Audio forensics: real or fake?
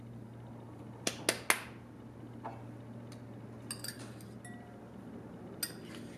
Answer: real